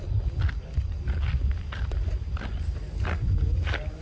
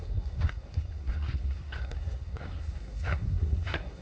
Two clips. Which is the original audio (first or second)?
first